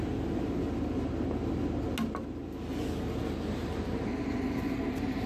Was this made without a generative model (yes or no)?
yes